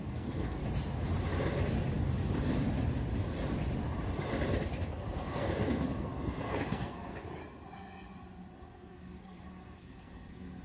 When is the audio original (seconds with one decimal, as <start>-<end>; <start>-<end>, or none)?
0.6-4.9; 7.4-8.5